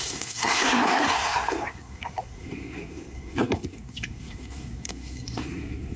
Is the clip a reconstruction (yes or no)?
yes